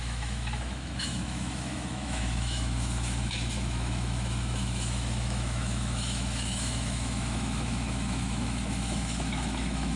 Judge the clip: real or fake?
fake